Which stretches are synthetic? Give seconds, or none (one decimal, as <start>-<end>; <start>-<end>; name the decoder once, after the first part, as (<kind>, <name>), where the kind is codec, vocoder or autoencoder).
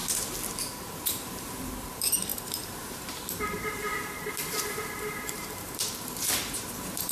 0.6-7.1 (vocoder, BigVGAN v2)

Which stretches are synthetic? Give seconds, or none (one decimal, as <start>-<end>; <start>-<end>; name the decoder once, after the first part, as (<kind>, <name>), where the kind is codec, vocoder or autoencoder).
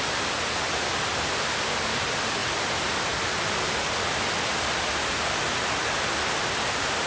0.0-2.4 (vocoder, BigVGAN v2); 6.4-7.1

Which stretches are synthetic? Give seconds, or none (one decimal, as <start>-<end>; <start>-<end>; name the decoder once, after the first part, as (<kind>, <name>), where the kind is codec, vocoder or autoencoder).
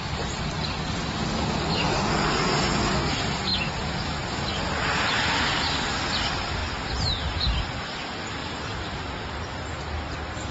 8.4-9.0 (vocoder, BigVGAN v2)